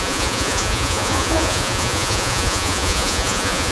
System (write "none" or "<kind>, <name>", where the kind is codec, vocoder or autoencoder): vocoder, Vocos